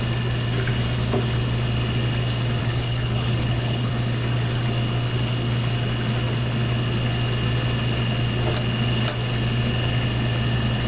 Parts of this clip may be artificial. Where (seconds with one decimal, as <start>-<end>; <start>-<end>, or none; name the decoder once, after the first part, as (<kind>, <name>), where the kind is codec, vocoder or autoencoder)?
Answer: 2.6-3.9 (codec, HILCodec)